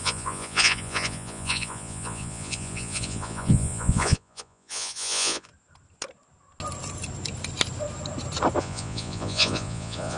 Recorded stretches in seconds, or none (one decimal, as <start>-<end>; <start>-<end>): 5.5-8.6